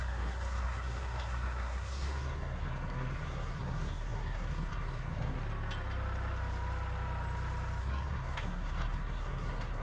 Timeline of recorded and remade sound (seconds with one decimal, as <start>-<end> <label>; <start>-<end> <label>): 0.0-5.4 remade; 5.4-7.8 recorded; 7.8-9.8 remade